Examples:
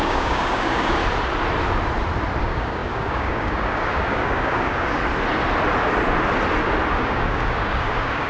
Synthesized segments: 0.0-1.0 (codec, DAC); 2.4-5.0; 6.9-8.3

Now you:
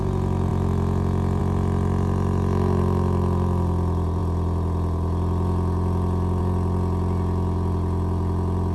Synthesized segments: none

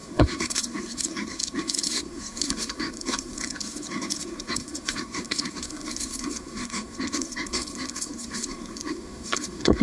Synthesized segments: 0.0-9.8 (codec, SNAC)

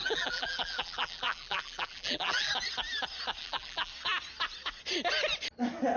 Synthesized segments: 0.0-2.5 (vocoder, BigVGAN v2); 3.4-3.9

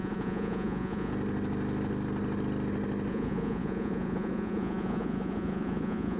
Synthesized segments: 0.0-1.1 (vocoder, Vocos); 3.1-6.2

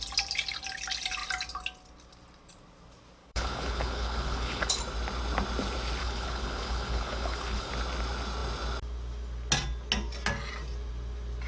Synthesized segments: 3.2-4.8 (codec, HILCodec); 6.0-7.7

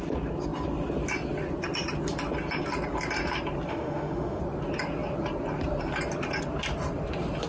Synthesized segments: 3.7-4.4 (autoencoder, DAC-VAE)

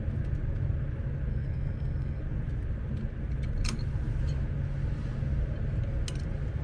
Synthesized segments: 1.3-2.2 (codec, SNAC)